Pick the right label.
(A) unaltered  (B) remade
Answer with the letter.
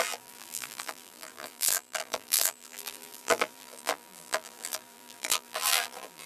B